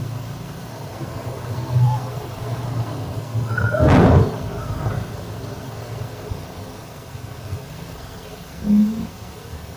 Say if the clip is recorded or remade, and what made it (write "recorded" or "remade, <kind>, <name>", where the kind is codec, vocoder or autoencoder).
remade, codec, SNAC